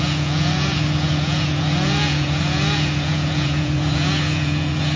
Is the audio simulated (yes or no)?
yes